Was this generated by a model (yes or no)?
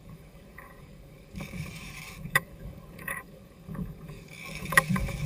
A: yes